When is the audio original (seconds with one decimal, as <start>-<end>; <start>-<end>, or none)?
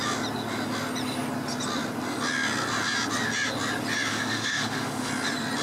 0.0-4.1; 5.1-5.6